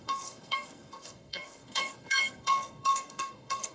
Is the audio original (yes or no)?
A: no